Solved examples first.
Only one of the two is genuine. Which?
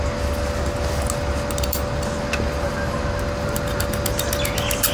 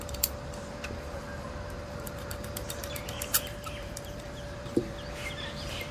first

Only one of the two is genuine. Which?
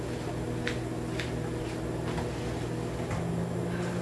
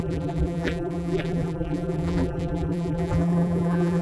first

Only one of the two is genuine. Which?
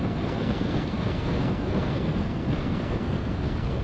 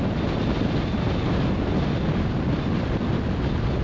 second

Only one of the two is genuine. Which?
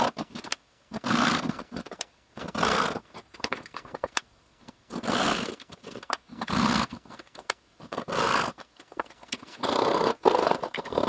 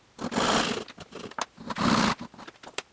second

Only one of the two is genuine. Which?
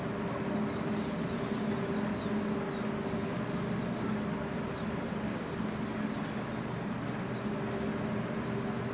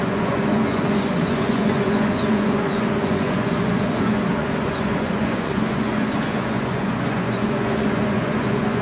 first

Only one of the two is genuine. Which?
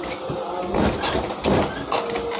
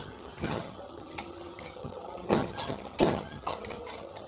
first